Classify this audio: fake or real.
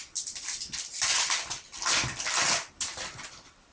real